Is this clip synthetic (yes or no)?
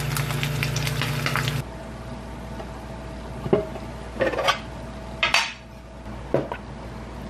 no